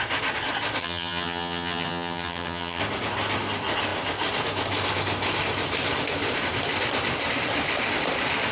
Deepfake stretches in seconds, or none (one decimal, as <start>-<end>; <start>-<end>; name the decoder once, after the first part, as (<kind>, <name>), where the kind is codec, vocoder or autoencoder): 0.8-2.8 (vocoder, HiFi-GAN)